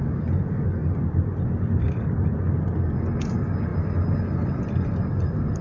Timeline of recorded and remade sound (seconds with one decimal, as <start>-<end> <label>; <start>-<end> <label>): 0.0-0.8 recorded; 0.8-1.9 remade; 1.9-5.6 recorded